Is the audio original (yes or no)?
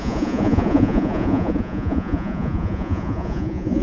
no